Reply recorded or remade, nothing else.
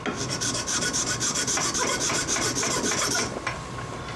recorded